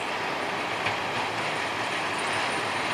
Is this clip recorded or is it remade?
recorded